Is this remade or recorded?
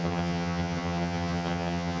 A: remade